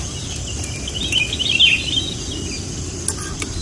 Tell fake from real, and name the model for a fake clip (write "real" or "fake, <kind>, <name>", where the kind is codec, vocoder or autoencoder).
real